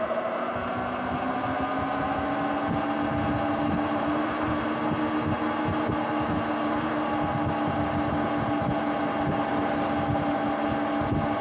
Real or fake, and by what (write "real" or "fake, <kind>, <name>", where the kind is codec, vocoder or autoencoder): real